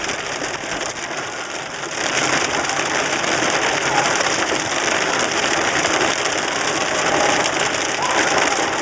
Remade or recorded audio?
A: remade